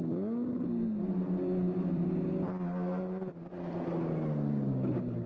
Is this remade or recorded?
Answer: recorded